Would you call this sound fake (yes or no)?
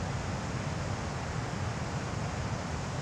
no